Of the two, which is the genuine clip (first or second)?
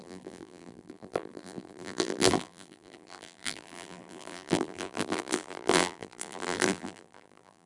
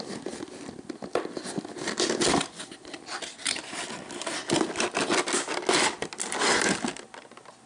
second